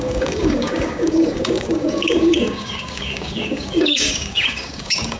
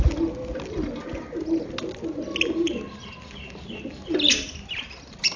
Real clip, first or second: second